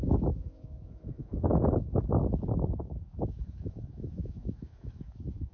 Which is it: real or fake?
fake